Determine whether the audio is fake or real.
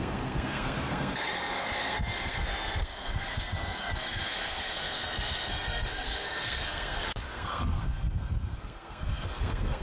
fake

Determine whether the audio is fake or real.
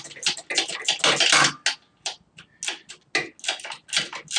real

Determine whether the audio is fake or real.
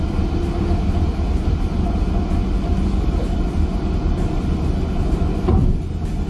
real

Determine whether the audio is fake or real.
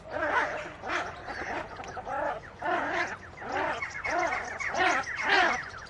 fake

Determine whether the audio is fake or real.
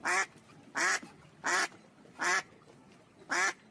fake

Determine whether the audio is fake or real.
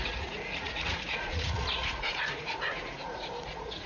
fake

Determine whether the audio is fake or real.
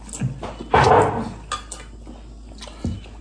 real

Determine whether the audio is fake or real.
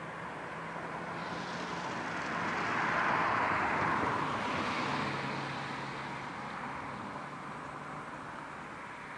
real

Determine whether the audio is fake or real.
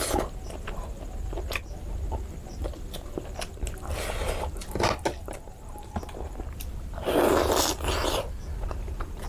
real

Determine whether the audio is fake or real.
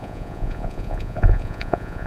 fake